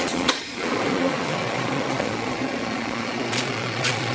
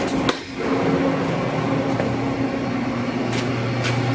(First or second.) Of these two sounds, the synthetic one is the first